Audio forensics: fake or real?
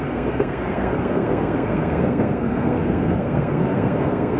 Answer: fake